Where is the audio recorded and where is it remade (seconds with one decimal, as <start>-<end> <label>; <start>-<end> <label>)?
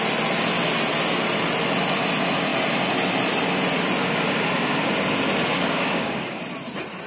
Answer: 0.0-4.0 recorded; 4.0-4.9 remade; 4.9-5.5 recorded; 5.5-6.4 remade; 6.4-7.1 recorded